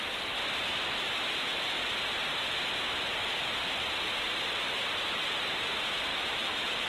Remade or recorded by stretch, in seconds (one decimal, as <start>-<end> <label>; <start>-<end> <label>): 0.0-6.1 recorded; 6.1-6.9 remade